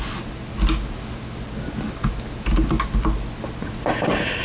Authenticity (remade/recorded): recorded